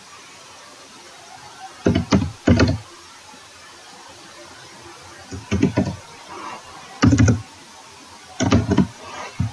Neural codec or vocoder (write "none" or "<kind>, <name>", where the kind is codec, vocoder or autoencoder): none